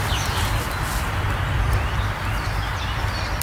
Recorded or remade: recorded